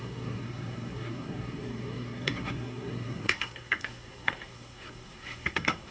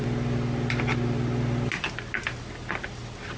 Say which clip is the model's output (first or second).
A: first